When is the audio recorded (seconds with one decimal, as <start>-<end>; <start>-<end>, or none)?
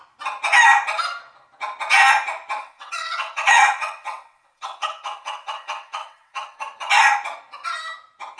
0.0-2.6; 6.6-8.4